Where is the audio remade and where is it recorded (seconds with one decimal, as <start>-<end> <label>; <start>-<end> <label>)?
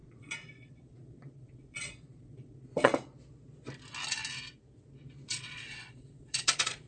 0.0-2.9 remade; 2.9-5.3 recorded; 5.3-6.9 remade